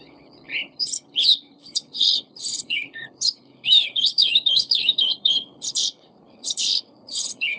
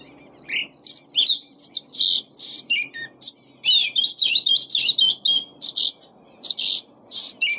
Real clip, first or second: second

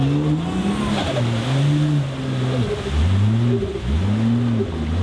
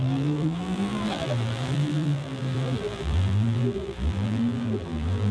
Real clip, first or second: first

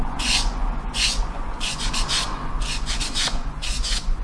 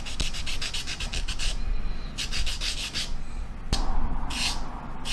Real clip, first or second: second